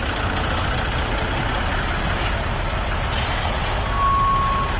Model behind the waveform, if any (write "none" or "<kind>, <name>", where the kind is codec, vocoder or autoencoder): none